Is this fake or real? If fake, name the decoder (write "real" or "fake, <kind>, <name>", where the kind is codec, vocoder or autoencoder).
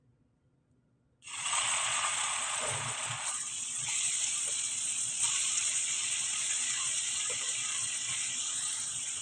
fake, vocoder, Vocos